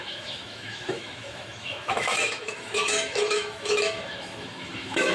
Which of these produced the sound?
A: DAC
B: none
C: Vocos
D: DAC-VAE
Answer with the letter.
D